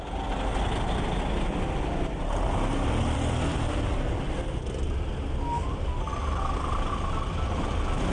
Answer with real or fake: real